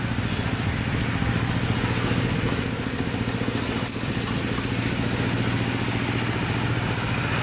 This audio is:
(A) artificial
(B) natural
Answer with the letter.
B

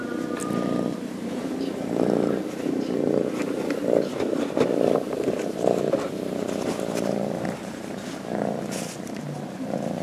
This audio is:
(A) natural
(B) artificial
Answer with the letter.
B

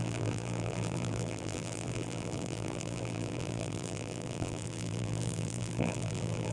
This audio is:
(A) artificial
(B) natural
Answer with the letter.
A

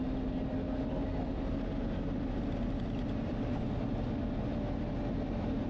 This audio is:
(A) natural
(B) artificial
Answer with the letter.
A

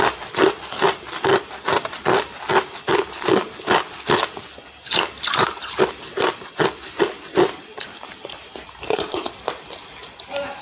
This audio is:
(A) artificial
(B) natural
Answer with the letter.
A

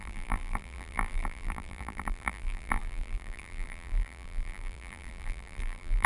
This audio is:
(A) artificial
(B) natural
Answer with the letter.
A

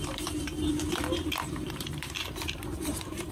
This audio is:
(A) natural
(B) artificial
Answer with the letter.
B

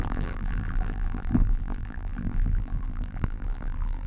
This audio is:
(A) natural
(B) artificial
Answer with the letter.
B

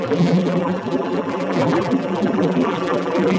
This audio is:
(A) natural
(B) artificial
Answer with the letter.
B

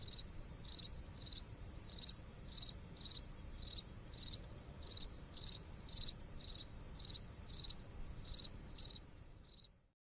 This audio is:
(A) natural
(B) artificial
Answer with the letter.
B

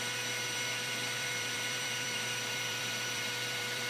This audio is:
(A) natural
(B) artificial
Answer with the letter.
B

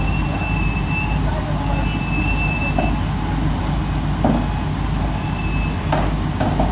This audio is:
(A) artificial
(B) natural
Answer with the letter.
B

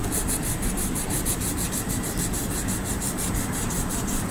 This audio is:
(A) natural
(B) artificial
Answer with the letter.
A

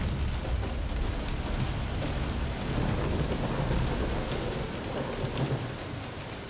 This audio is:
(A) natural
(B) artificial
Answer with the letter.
A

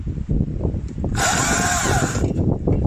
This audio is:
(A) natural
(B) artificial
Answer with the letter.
B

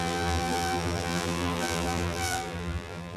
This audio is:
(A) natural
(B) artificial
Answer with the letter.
B